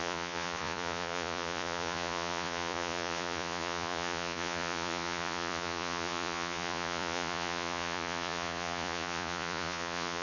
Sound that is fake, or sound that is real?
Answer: fake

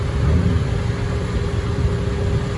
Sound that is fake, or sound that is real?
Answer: real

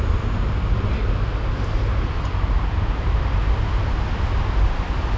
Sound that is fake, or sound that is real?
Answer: real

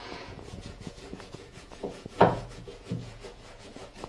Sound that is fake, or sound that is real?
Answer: fake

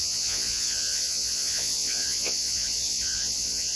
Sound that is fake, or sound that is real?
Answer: fake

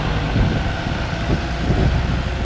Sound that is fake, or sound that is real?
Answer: real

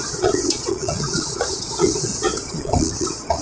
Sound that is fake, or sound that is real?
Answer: fake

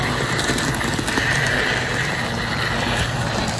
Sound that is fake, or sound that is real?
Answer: real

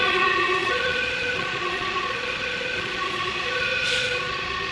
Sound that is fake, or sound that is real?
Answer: fake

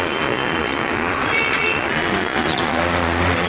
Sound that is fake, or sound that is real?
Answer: fake